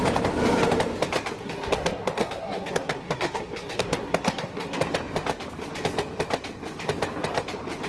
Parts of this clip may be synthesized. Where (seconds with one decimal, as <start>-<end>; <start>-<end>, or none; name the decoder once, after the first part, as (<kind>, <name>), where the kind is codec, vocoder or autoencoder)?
1.4-4.8 (codec, SNAC)